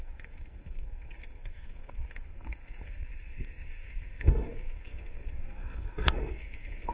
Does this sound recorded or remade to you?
remade